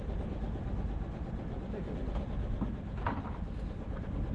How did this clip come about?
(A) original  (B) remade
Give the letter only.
A